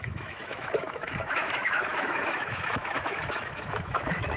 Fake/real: fake